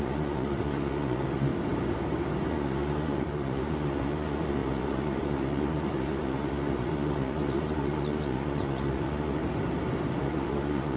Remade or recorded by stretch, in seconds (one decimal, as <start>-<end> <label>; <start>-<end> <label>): 0.0-1.5 remade; 1.5-2.5 recorded; 2.5-9.4 remade; 9.4-10.2 recorded; 10.2-11.0 remade